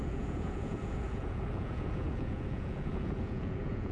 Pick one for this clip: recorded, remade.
remade